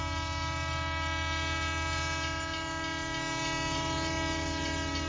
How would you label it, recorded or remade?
recorded